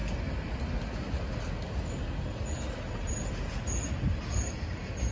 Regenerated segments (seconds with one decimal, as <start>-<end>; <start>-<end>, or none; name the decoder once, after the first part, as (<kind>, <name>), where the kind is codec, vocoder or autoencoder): none